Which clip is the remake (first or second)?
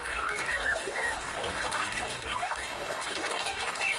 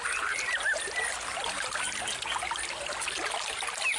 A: first